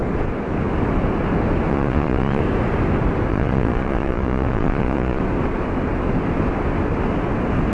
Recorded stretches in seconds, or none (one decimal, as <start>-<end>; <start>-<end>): 0.0-1.7; 2.4-3.3; 5.2-7.7